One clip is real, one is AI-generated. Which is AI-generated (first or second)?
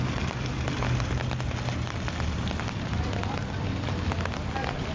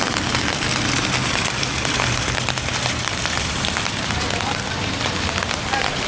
second